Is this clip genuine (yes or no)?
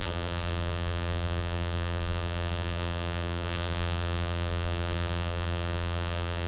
no